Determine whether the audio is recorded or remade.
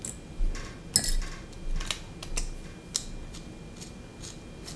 recorded